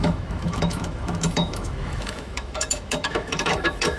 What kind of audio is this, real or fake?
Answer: fake